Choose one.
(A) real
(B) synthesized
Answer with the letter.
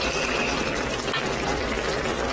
A